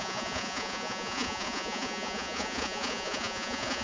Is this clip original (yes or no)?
no